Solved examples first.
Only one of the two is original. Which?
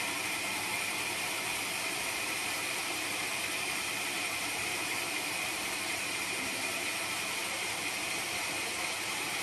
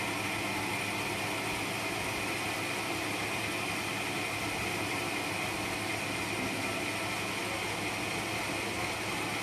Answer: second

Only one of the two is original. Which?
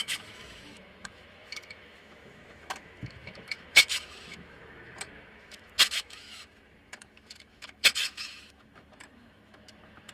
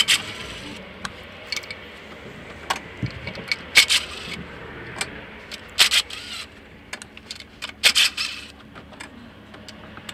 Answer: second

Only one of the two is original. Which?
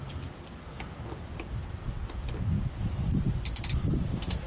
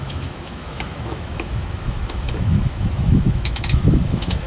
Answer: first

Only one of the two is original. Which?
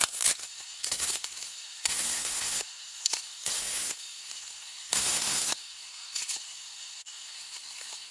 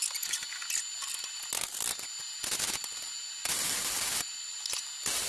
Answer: second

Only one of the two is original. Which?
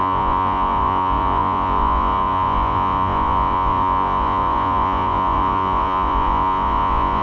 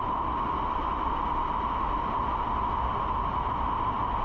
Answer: second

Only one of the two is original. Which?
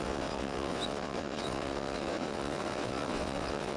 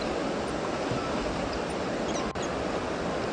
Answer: second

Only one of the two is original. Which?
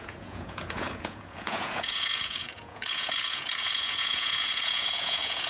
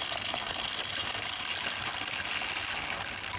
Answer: second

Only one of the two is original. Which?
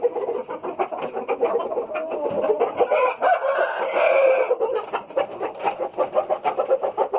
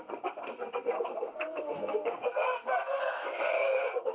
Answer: first